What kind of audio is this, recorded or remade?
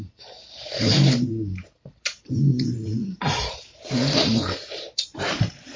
remade